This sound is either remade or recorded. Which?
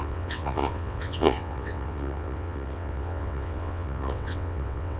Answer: remade